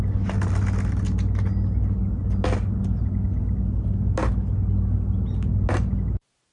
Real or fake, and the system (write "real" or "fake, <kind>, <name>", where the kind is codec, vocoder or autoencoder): real